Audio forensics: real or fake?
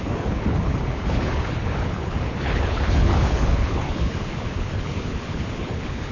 fake